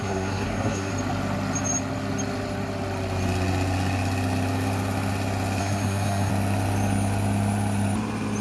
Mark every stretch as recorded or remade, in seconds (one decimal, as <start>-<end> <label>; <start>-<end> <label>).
0.0-0.9 remade; 0.9-5.6 recorded; 5.6-6.3 remade; 6.3-8.4 recorded